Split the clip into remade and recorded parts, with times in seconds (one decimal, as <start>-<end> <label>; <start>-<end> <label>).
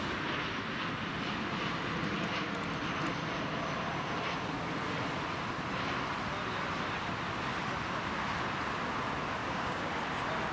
0.0-9.4 recorded; 9.4-9.9 remade; 9.9-10.5 recorded